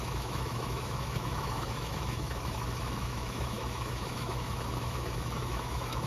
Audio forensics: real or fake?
fake